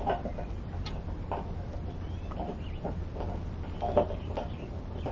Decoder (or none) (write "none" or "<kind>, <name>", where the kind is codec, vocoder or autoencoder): none